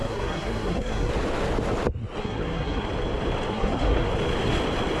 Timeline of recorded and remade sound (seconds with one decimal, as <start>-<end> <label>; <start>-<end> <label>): 0.0-1.1 remade; 1.1-2.2 recorded; 2.2-2.9 remade; 2.9-3.5 recorded; 3.5-4.1 remade; 4.1-5.0 recorded